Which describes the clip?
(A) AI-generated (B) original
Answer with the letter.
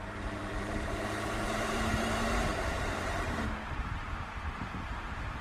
A